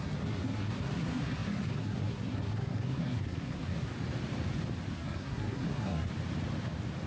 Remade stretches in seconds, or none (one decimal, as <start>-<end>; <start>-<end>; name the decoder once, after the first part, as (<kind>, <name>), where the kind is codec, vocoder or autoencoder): 0.0-3.9 (codec, SNAC); 4.9-6.1